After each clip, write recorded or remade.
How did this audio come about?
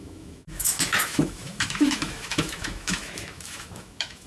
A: remade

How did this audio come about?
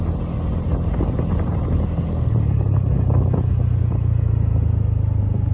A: recorded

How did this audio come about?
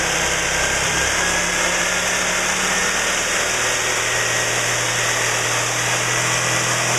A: recorded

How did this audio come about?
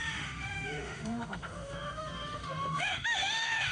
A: remade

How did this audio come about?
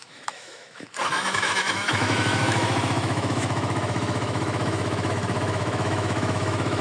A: remade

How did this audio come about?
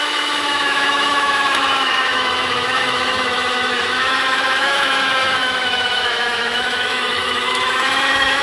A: remade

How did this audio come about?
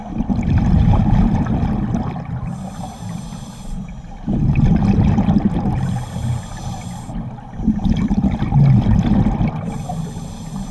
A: recorded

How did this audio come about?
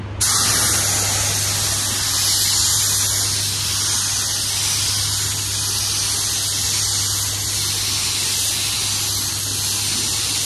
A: recorded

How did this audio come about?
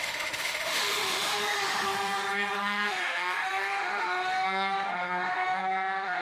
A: remade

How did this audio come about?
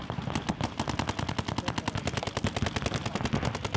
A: recorded